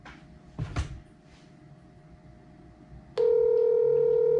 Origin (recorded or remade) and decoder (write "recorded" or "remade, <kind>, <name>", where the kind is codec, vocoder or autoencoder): recorded